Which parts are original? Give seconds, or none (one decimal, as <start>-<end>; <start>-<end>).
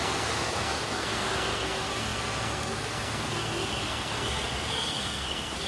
none